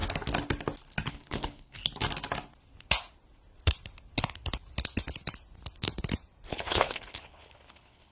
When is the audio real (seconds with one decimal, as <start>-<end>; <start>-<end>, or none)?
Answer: 0.0-1.1; 1.8-6.5